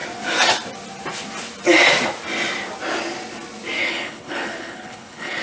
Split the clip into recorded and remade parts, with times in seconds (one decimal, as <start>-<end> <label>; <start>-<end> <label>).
0.0-3.8 recorded; 3.8-5.4 remade